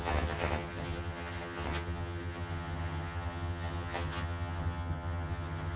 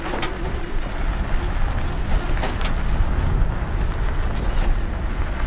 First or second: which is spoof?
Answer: first